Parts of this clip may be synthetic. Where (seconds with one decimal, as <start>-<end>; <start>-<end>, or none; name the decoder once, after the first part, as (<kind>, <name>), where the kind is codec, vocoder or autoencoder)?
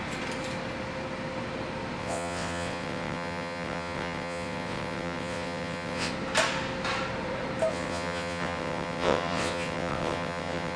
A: 2.0-6.1 (vocoder, WaveNeXt); 7.7-10.8